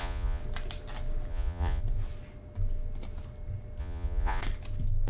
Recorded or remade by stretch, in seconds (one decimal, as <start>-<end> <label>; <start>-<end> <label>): 0.0-0.4 remade; 0.4-1.3 recorded; 1.3-1.8 remade; 1.8-3.8 recorded; 3.8-4.4 remade; 4.4-5.1 recorded